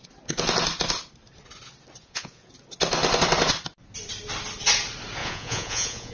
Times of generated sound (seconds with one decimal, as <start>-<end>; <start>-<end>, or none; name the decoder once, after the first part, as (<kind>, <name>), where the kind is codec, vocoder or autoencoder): 2.0-2.5 (vocoder, Vocos); 5.2-6.1